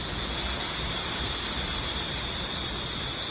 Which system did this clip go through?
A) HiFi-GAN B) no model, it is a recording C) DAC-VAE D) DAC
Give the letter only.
B